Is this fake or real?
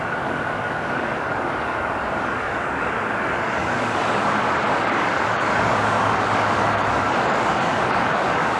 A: fake